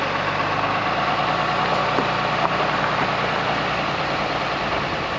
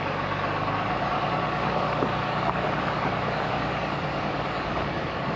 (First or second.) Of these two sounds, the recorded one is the first